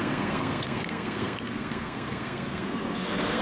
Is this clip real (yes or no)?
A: no